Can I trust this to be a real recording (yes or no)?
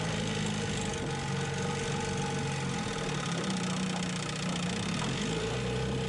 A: yes